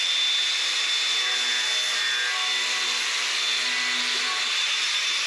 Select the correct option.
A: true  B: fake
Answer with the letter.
A